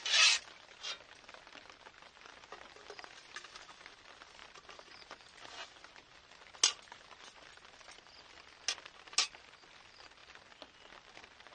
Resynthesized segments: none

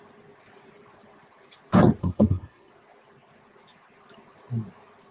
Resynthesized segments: 2.0-2.7 (codec, SNAC)

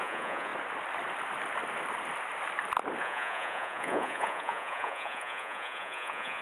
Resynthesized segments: 0.0-0.5 (vocoder, Vocos); 3.0-6.4